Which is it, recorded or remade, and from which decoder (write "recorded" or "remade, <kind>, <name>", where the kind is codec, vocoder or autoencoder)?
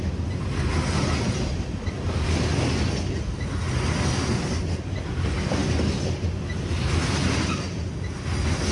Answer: recorded